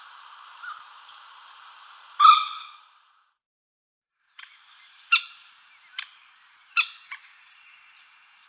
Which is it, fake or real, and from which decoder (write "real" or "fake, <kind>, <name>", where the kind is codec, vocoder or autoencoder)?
fake, vocoder, BigVGAN v2